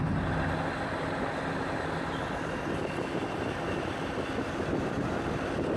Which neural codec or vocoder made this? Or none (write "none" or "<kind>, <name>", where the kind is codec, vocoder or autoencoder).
none